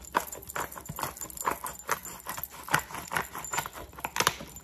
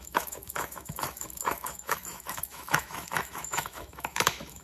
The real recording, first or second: first